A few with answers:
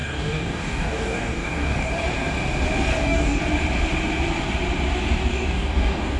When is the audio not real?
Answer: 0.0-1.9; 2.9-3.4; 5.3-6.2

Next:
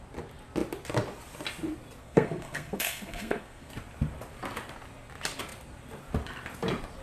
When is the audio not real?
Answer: 2.0-3.7

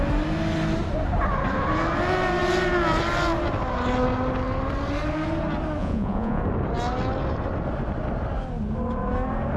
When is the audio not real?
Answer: 5.8-6.4